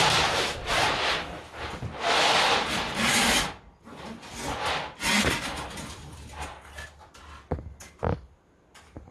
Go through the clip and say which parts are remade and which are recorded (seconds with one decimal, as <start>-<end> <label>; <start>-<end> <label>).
0.0-9.1 recorded